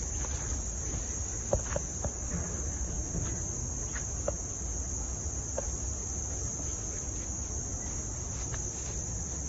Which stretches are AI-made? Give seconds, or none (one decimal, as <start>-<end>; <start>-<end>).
1.9-4.5; 6.0-6.5